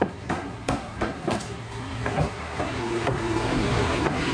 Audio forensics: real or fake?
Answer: fake